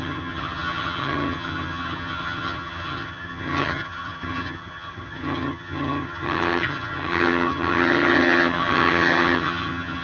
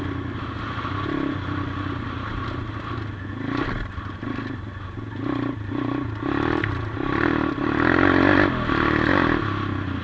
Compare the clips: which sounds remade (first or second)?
first